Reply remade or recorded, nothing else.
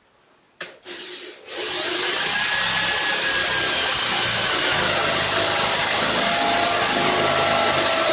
recorded